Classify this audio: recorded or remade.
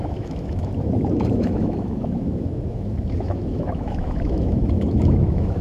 remade